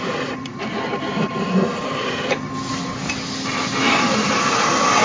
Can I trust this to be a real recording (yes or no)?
yes